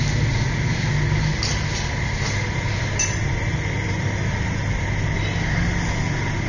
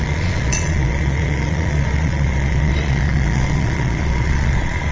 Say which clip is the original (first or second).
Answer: first